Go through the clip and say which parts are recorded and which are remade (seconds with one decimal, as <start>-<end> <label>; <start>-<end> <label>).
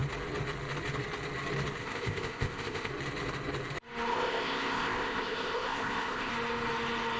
0.0-1.8 recorded; 1.8-2.9 remade; 2.9-4.1 recorded; 4.1-6.3 remade; 6.3-7.2 recorded